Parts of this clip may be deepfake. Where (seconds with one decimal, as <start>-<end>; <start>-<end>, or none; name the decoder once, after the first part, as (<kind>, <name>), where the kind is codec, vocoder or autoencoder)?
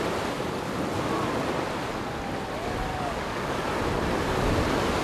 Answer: 2.9-3.7 (codec, DAC)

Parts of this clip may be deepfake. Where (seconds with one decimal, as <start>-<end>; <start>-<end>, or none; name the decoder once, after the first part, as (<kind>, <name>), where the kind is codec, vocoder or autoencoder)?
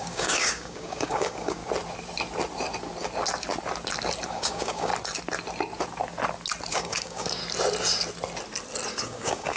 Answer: 0.0-1.6 (codec, DAC); 4.3-4.9; 6.7-7.4; 8.9-9.6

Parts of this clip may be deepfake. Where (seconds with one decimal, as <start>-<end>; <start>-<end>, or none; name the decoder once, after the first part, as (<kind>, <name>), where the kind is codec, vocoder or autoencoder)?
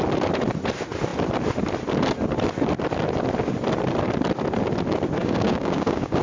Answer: 5.2-6.2 (codec, DAC)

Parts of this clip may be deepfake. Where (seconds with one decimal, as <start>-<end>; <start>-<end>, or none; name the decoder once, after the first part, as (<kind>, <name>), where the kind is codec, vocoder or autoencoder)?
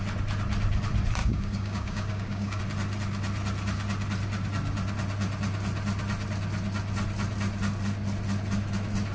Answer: 1.2-2.6 (codec, DAC)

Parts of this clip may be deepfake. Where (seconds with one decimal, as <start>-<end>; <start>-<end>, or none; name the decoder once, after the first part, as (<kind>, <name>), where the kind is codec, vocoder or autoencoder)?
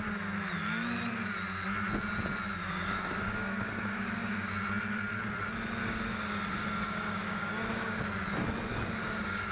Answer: 2.6-4.5 (codec, DAC); 5.8-8.0; 8.7-9.5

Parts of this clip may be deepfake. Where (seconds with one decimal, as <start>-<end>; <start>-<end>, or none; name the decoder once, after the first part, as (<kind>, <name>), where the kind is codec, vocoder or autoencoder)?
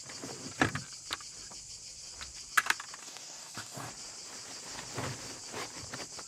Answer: 3.0-3.9 (codec, DAC)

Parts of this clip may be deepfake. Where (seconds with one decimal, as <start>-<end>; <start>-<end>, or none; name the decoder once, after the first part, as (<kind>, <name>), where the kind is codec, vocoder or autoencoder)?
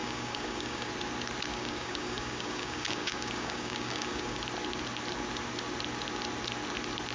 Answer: 0.0-0.9 (codec, DAC); 1.5-4.4